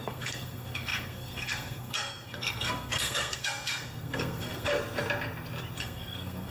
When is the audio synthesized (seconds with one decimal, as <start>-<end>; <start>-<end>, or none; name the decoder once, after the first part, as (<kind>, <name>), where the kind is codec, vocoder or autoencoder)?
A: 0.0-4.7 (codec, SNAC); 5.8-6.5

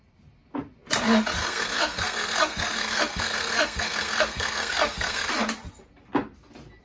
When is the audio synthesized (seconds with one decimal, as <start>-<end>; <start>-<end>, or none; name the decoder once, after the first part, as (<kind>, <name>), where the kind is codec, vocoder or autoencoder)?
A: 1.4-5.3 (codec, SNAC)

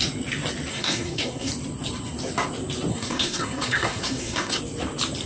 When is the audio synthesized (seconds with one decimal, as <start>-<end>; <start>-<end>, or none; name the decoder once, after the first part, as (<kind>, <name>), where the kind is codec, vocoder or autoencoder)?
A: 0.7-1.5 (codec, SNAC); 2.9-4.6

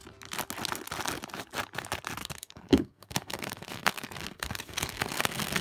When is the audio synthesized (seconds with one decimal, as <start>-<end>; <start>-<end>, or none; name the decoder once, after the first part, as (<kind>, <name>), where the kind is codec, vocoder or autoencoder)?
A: 2.2-5.6 (codec, SNAC)

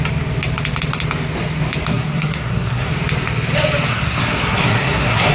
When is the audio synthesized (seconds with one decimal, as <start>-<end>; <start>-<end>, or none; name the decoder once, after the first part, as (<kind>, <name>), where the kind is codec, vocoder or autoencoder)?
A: 1.9-2.9 (codec, SNAC); 3.9-5.3

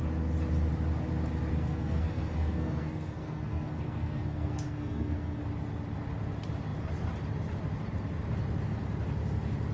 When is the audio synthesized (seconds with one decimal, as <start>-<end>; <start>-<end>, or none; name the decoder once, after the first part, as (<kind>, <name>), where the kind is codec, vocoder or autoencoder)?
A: 1.5-5.4 (codec, SNAC)

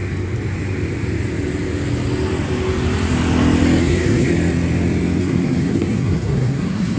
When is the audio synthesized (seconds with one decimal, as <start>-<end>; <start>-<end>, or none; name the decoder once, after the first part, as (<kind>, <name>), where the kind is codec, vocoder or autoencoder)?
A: 3.8-4.3 (codec, SNAC); 5.2-7.0